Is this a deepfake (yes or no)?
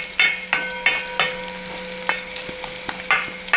no